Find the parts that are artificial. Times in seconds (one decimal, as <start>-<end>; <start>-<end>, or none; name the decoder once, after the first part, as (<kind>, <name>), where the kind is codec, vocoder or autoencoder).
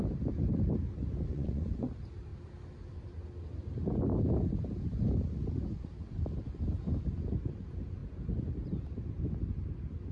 1.3-1.9 (vocoder, Vocos)